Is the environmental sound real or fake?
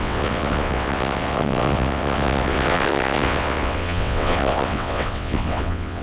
fake